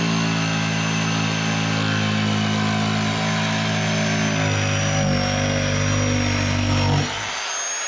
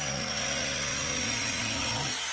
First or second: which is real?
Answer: first